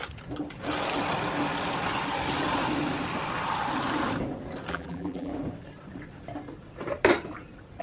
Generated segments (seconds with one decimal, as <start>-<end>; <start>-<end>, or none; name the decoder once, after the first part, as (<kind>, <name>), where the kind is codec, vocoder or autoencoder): 4.7-5.3 (vocoder, BigVGAN v2)